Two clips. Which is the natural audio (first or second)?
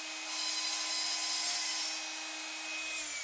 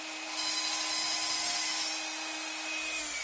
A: first